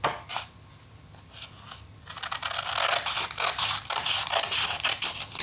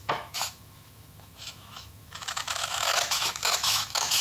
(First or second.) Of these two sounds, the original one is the first